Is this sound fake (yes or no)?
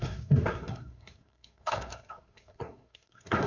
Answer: yes